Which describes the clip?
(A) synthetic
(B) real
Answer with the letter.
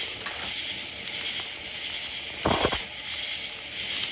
B